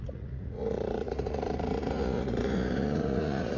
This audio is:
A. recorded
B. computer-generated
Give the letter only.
B